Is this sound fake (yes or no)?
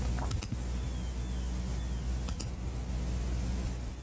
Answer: no